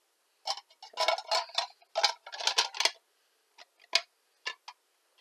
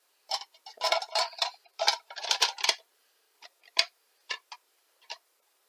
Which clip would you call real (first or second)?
first